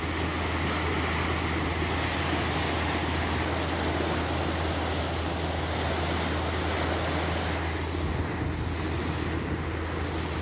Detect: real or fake real